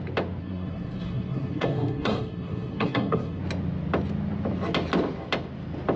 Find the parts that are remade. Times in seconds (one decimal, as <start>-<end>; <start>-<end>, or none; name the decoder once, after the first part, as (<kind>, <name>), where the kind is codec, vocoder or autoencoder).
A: 0.4-3.4 (codec, SNAC)